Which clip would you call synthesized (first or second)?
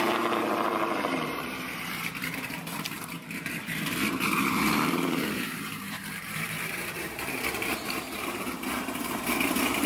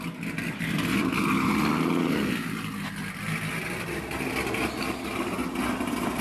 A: first